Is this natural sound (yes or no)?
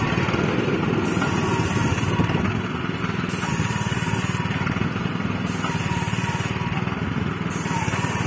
yes